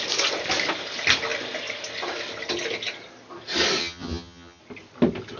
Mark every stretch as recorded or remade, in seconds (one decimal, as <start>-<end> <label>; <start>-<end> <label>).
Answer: 0.0-3.8 recorded; 3.8-4.6 remade; 4.6-5.4 recorded